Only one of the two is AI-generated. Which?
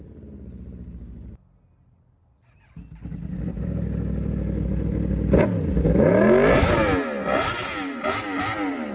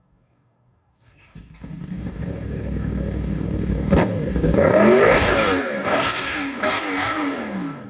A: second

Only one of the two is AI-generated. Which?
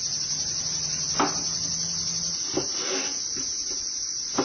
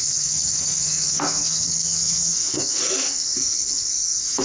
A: second